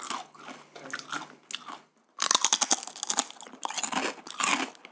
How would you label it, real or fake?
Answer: real